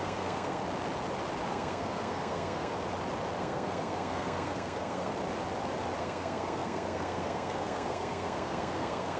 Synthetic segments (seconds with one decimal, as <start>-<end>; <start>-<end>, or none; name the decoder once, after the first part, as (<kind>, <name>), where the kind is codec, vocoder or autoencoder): 0.0-0.6 (codec, SNAC); 1.5-2.7; 3.4-5.1; 6.0-9.2